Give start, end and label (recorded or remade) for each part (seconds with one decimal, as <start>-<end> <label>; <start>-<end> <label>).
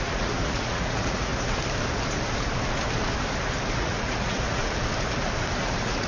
0.0-1.3 remade; 1.3-3.8 recorded; 3.8-4.6 remade; 4.6-5.6 recorded; 5.6-6.1 remade